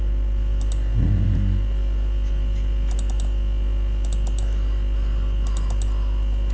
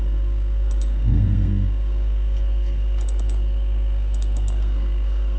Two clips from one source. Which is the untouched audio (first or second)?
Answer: first